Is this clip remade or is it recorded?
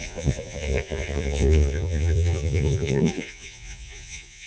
remade